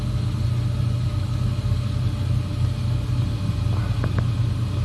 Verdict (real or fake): real